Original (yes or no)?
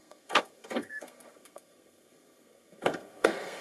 no